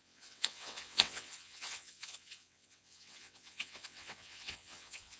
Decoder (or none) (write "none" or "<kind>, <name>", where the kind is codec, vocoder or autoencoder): vocoder, WaveNeXt